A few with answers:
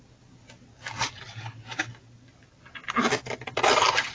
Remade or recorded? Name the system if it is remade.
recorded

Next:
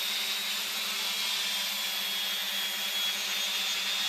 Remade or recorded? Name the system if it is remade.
recorded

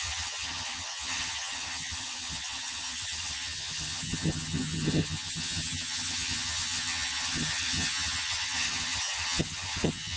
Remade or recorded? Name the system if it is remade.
remade, vocoder, HiFi-GAN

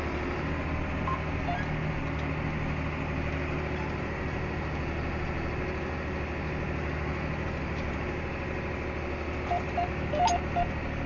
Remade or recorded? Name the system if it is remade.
recorded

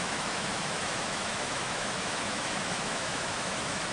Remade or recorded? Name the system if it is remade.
remade, autoencoder, DAC-VAE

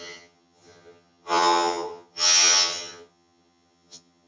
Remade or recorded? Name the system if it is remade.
remade, vocoder, HiFi-GAN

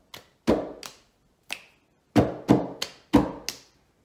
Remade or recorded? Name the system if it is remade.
recorded